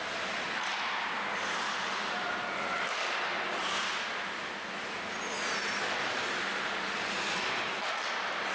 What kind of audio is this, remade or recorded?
recorded